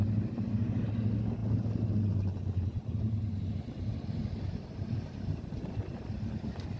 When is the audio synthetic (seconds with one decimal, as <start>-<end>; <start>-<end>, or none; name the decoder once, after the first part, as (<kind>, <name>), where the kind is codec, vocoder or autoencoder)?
none